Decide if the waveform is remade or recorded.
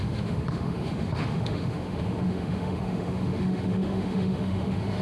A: remade